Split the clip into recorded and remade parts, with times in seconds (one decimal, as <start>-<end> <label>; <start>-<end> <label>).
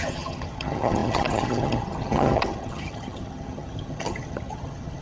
0.0-5.0 remade